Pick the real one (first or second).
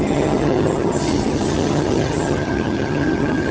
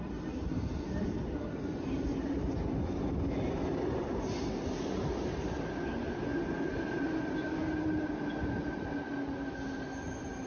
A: second